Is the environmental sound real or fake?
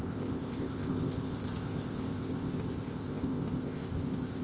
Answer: fake